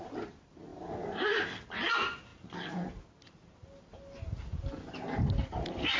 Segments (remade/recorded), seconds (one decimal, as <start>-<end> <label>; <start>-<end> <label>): 0.0-6.0 recorded